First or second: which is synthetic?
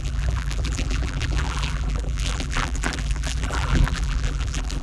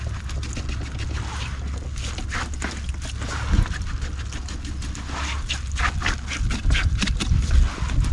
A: first